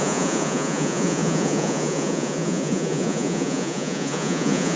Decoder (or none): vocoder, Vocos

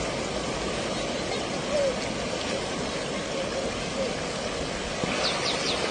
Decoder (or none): none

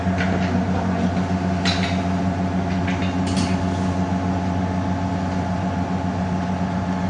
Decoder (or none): none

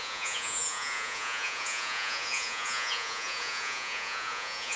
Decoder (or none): vocoder, Vocos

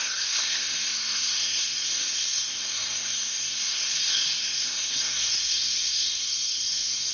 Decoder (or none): codec, SNAC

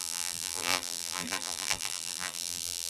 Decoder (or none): vocoder, BigVGAN v2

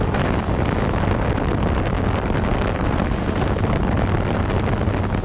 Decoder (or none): none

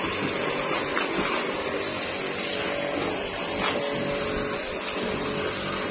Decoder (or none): none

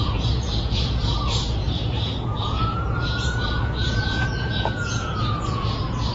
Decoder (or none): vocoder, Vocos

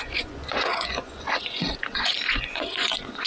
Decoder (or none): vocoder, Vocos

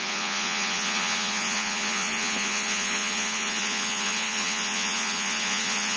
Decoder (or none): vocoder, Vocos